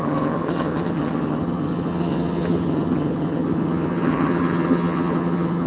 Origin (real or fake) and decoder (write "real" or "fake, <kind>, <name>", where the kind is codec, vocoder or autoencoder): fake, vocoder, HiFi-GAN